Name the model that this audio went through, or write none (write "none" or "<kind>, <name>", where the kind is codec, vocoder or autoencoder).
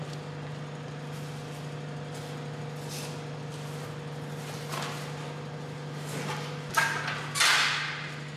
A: none